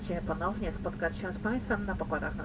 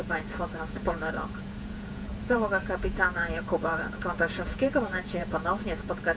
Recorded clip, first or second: first